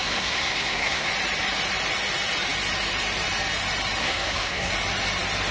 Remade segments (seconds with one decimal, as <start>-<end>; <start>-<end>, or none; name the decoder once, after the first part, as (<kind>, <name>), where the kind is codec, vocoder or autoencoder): 0.0-1.1 (codec, SNAC); 4.0-4.7